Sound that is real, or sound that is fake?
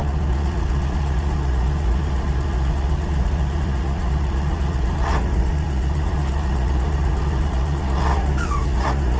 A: fake